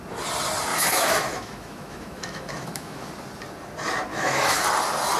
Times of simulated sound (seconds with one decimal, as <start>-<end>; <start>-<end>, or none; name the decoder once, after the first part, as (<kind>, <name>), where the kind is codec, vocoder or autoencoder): 0.7-3.1 (autoencoder, DAC-VAE); 4.1-4.6